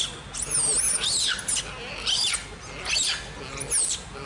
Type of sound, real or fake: real